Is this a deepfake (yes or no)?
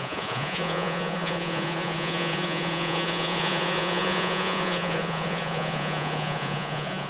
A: yes